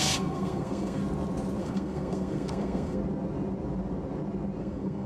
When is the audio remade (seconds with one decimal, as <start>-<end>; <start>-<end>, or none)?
0.0-1.0; 1.6-3.0; 4.6-5.1